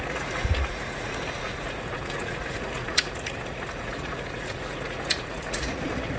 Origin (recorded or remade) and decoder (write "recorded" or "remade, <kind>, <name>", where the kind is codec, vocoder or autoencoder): remade, vocoder, Vocos